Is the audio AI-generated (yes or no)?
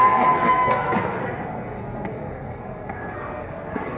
yes